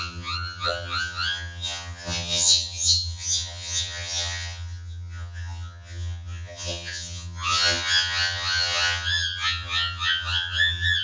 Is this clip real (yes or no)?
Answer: no